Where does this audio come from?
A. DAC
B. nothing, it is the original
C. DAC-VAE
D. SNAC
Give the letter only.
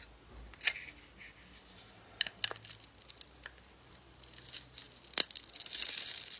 B